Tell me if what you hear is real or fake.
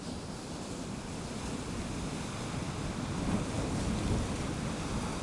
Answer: fake